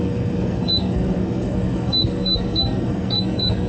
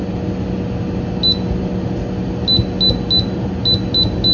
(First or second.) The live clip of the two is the second